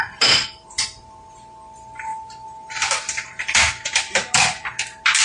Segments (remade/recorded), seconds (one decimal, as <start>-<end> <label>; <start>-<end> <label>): 0.0-5.2 recorded